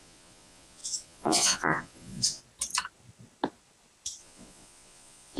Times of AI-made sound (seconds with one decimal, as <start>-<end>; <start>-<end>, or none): 0.0-2.4; 4.2-5.4